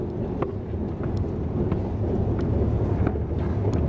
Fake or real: real